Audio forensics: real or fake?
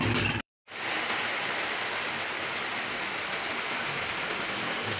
fake